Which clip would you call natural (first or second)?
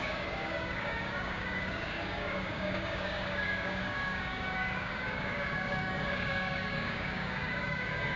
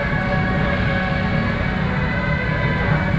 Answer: second